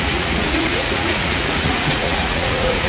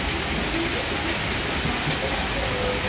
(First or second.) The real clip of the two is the second